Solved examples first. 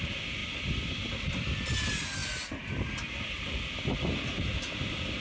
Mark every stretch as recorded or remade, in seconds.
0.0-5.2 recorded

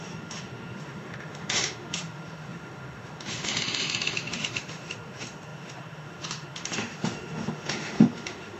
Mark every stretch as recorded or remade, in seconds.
0.0-8.6 remade

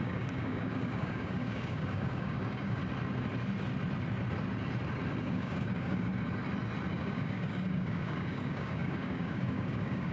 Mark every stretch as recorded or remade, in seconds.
0.0-2.8 remade; 2.8-5.2 recorded; 5.2-6.1 remade; 6.1-6.9 recorded; 6.9-10.1 remade

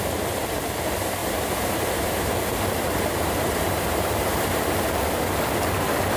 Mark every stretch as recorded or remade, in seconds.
0.0-1.2 recorded; 1.2-4.9 remade; 4.9-6.2 recorded

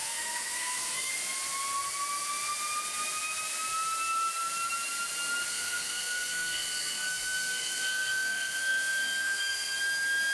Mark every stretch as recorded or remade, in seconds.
0.0-1.1 remade; 1.1-5.5 recorded; 5.5-9.8 remade; 9.8-10.3 recorded